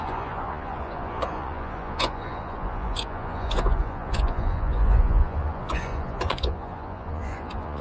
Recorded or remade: remade